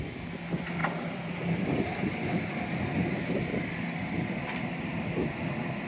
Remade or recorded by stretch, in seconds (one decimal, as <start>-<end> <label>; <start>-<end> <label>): 0.0-5.9 recorded